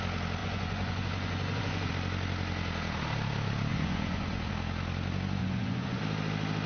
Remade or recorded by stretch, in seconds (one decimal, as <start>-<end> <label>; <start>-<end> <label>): 0.0-0.4 recorded; 0.4-1.9 remade; 1.9-3.7 recorded; 3.7-4.5 remade; 4.5-5.4 recorded; 5.4-6.0 remade; 6.0-6.7 recorded